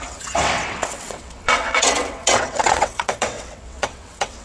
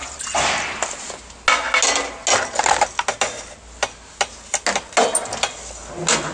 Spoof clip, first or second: first